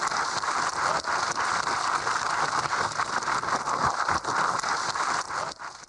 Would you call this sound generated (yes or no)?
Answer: no